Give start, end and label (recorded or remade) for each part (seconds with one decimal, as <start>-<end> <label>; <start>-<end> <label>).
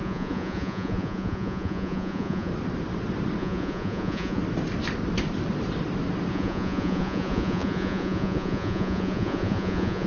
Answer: 0.0-2.5 remade; 2.5-3.4 recorded; 3.4-4.4 remade; 4.4-6.3 recorded; 6.3-10.1 remade